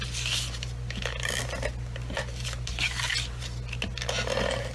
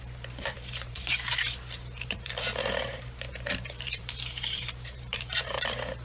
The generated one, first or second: second